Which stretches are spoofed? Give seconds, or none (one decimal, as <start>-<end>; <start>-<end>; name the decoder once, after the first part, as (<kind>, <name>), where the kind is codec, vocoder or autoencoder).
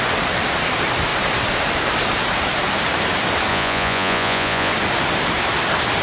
3.5-4.7 (vocoder, Vocos)